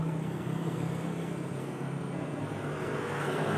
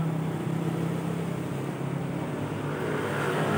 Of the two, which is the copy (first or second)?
first